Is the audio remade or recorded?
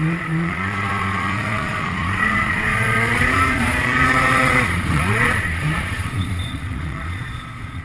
remade